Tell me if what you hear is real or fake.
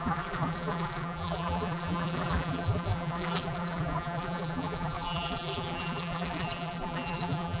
fake